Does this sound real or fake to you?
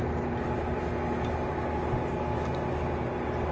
real